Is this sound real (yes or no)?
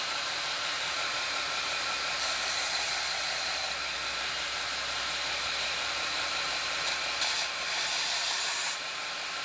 no